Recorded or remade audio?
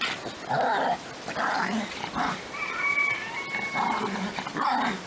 recorded